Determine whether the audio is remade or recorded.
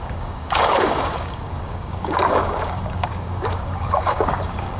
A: remade